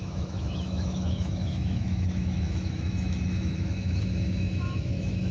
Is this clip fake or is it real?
fake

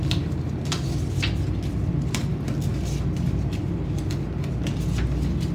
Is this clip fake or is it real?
real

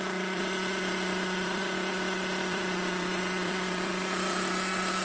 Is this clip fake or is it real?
fake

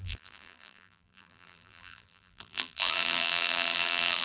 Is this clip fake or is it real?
fake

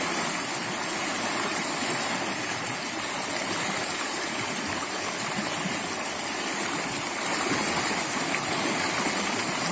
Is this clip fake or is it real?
real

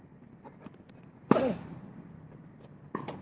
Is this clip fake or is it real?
real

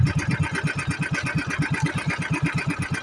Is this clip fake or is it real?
real